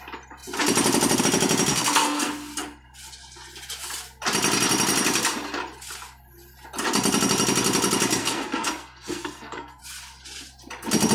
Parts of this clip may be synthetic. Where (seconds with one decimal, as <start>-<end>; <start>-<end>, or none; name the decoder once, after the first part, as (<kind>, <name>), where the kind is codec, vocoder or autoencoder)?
1.7-2.3 (codec, SNAC); 8.2-9.8